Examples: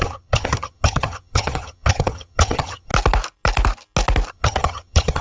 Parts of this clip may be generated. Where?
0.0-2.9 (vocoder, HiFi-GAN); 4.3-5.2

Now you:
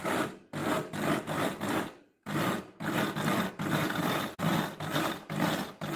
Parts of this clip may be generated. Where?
none

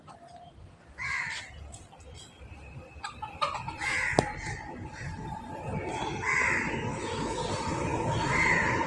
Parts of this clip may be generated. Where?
6.9-7.4 (autoencoder, DAC-VAE)

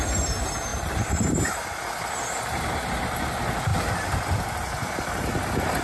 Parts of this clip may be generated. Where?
0.7-1.6 (vocoder, BigVGAN v2)

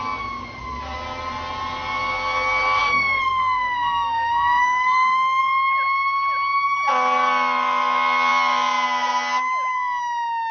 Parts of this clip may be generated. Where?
2.8-5.4 (codec, SNAC)

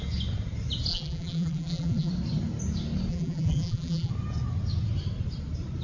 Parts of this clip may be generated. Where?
0.9-2.1 (vocoder, BigVGAN v2); 3.1-4.1

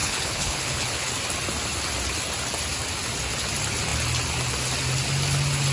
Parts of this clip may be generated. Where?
0.0-1.1 (codec, HILCodec)

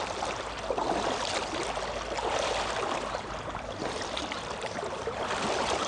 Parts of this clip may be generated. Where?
none